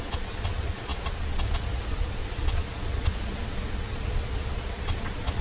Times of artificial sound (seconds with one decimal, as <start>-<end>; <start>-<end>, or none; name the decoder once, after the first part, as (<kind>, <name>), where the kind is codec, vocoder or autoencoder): 0.0-5.4 (vocoder, Vocos)